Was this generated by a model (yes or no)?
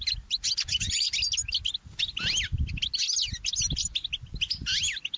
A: no